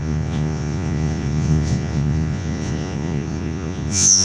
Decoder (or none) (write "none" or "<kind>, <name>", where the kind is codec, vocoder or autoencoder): vocoder, Vocos